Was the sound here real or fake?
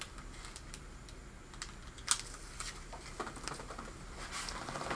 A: real